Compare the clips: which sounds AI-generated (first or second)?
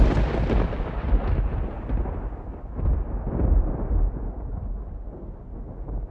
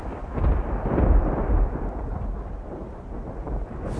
second